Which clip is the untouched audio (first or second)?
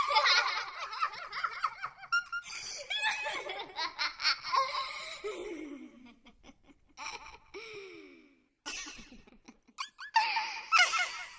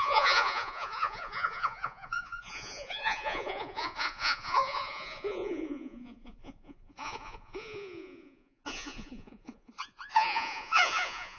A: first